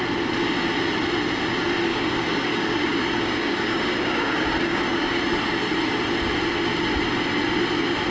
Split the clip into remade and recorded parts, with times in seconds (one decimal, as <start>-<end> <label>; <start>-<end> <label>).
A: 0.0-1.9 recorded; 1.9-5.2 remade; 5.2-8.1 recorded